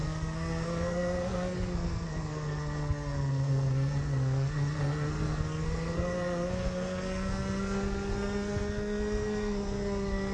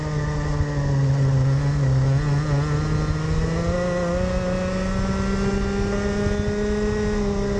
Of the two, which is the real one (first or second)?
second